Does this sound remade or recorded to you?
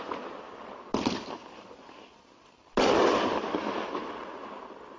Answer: recorded